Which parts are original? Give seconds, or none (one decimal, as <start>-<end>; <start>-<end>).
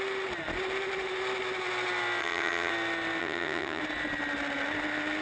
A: 0.0-2.2; 2.7-3.2; 3.8-5.2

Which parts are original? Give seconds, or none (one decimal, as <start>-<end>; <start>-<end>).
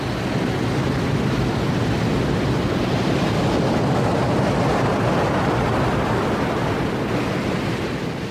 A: 0.0-8.3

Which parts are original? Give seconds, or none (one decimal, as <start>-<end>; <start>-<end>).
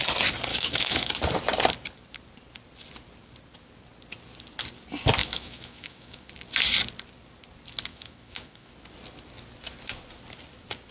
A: 0.0-0.5; 1.1-5.2; 6.3-7.9; 8.7-10.9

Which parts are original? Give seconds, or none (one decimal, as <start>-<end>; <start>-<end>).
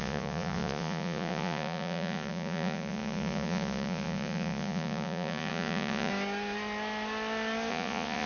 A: 6.1-7.7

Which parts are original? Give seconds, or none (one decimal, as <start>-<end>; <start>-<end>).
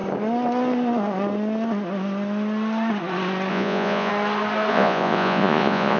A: 0.0-3.5; 4.1-4.7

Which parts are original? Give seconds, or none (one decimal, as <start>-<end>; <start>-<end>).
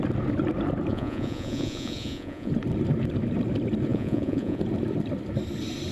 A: 0.0-0.9; 2.5-3.9; 4.6-5.9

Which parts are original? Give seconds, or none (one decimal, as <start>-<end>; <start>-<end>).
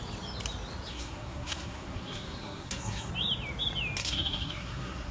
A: 0.0-0.9; 3.1-4.0